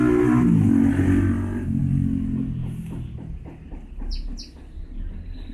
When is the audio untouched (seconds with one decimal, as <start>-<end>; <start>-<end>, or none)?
0.0-5.5

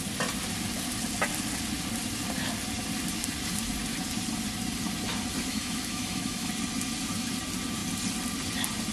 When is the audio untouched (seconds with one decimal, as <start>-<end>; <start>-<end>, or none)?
0.0-5.5; 6.5-8.9

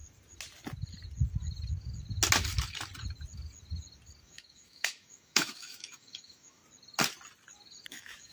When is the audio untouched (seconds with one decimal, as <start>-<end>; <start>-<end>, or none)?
0.0-4.2; 6.6-7.9

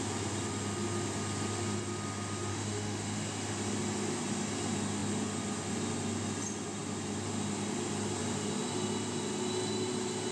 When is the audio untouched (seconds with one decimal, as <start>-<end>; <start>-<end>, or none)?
0.0-2.5; 3.2-10.3

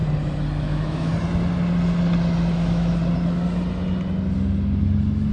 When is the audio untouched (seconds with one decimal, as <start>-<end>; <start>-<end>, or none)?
0.0-0.6; 1.1-2.5; 3.0-5.3

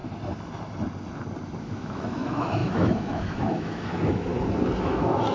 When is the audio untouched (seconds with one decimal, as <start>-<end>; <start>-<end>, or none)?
0.0-1.6; 4.3-4.8